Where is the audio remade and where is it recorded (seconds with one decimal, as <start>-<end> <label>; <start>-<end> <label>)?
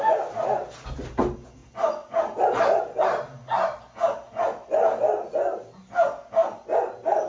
0.0-1.6 recorded; 1.6-2.8 remade; 2.8-6.4 recorded; 6.4-7.3 remade